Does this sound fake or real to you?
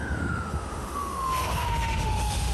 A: fake